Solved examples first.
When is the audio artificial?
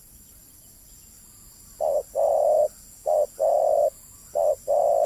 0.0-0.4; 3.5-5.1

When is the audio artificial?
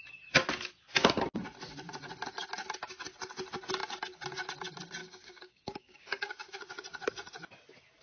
5.0-6.5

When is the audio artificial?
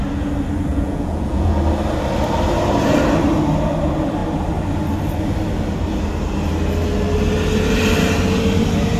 0.7-1.6